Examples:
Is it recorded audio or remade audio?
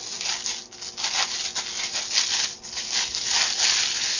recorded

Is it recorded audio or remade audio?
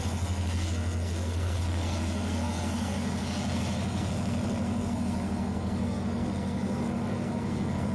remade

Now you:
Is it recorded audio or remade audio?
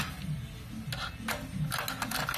recorded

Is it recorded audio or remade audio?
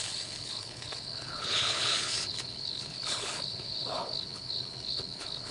remade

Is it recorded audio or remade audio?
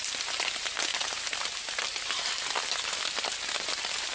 recorded